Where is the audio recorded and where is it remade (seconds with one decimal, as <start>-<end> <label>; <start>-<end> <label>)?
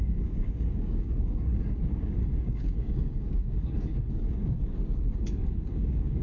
0.0-6.2 remade